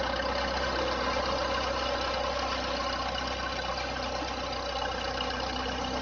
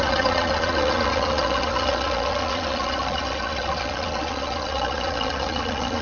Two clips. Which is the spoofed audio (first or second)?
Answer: second